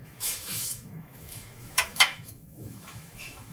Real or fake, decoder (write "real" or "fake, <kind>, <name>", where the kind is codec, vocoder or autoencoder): fake, autoencoder, DAC-VAE